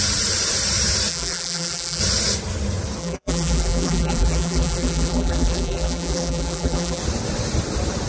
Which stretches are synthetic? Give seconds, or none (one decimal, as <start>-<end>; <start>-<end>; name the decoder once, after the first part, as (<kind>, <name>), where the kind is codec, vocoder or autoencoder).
1.1-2.0 (vocoder, BigVGAN v2); 3.0-7.0